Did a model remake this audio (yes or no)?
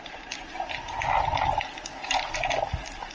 no